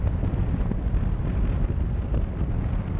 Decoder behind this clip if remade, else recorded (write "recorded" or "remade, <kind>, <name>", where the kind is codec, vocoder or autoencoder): recorded